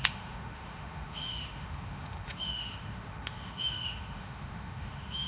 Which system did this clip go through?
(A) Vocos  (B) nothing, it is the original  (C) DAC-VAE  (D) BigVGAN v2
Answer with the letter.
C